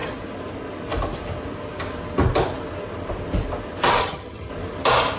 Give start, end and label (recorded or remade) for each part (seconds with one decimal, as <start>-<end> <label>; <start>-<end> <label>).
0.0-4.0 recorded; 4.0-4.5 remade; 4.5-5.2 recorded